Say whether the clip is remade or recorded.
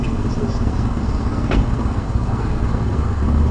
remade